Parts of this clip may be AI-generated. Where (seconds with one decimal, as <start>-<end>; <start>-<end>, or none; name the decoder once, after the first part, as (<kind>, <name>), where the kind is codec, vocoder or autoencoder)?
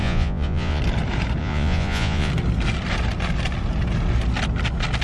0.0-0.8 (vocoder, Vocos); 1.4-2.3